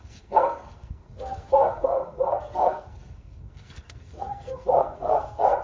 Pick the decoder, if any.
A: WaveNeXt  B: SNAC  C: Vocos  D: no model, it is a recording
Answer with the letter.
B